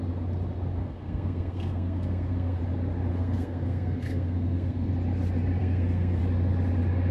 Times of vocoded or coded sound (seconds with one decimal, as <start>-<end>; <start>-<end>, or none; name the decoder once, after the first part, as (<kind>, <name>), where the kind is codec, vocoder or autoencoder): 0.8-2.6 (codec, SNAC); 3.1-4.9; 5.6-6.2